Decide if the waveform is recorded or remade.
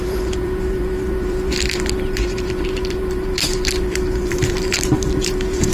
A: remade